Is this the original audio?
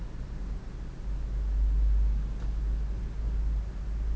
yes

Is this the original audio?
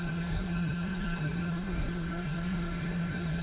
no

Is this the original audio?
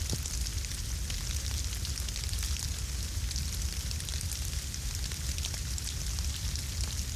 yes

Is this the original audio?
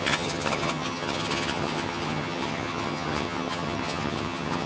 no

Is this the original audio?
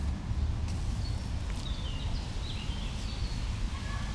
yes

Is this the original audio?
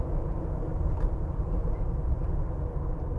yes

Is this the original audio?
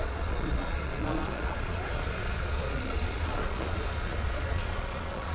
no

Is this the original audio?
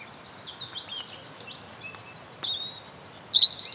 yes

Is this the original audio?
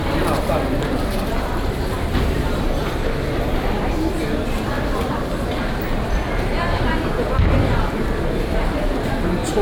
no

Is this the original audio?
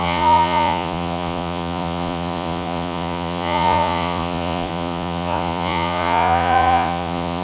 no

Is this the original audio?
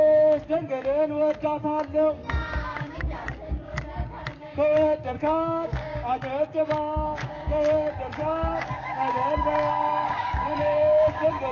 no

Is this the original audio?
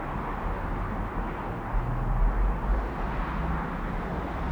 yes